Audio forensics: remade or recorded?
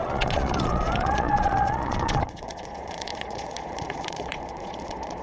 remade